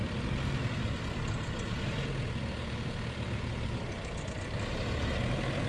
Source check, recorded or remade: recorded